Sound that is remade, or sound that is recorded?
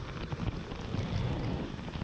recorded